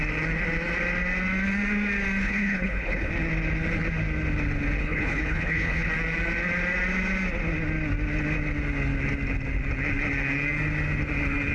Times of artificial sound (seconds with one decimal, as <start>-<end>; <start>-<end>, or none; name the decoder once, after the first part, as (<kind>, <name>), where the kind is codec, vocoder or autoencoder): 2.2-3.1 (codec, HILCodec); 4.8-5.9